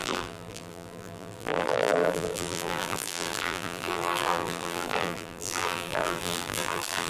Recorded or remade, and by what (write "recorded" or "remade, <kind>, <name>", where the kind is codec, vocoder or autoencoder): remade, vocoder, BigVGAN v2